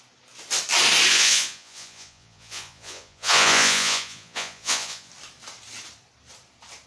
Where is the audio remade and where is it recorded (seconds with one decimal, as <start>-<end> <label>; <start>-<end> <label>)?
0.0-1.1 recorded; 1.1-5.1 remade; 5.1-6.9 recorded